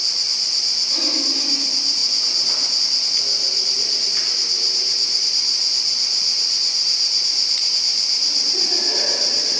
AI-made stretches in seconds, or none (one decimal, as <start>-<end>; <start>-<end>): none